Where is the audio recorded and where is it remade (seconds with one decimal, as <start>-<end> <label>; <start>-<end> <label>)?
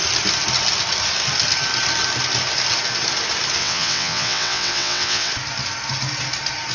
0.0-3.6 recorded; 3.6-5.3 remade; 5.3-6.7 recorded